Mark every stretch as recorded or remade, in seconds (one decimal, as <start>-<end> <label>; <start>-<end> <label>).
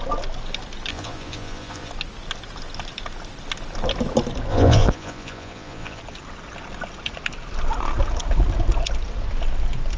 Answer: 0.0-0.9 recorded; 0.9-1.9 remade; 1.9-4.5 recorded; 4.5-6.0 remade; 6.0-10.0 recorded